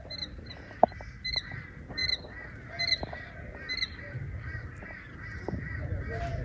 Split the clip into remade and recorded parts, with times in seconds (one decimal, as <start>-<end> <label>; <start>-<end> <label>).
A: 0.0-6.4 recorded